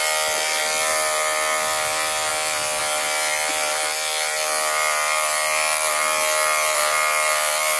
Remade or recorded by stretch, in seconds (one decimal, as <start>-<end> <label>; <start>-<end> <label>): 0.0-7.8 recorded